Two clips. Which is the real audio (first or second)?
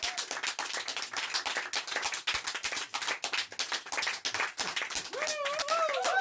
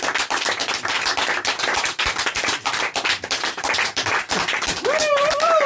first